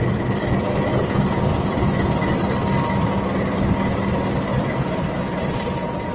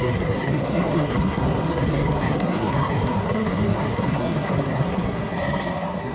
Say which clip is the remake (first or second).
second